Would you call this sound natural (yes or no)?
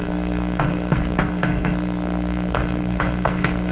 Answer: no